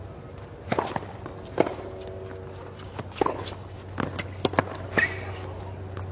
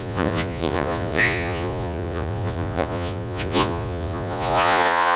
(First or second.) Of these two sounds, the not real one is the second